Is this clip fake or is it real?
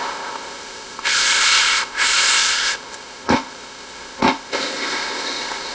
fake